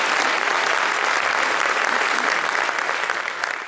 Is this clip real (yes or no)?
yes